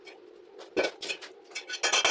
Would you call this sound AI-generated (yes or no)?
no